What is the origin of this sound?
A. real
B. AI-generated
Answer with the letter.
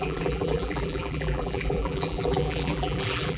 B